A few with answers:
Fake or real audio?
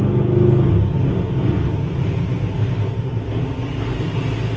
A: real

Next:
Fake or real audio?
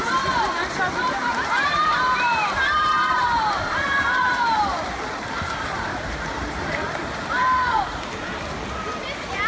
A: fake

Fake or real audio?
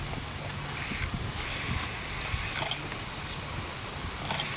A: real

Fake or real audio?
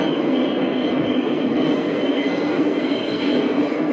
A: fake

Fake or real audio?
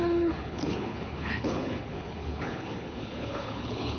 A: fake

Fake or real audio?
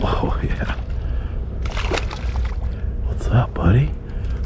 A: real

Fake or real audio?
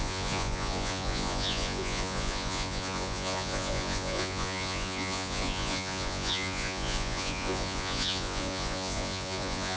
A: fake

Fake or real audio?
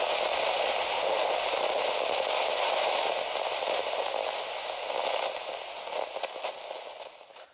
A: real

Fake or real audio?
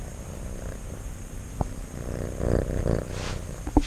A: real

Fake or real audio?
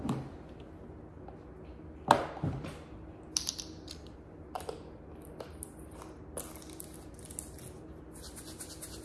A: real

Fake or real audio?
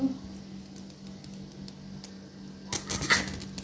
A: real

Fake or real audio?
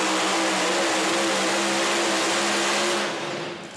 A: real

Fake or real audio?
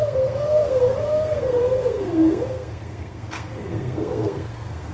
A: fake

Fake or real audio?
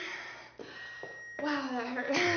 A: real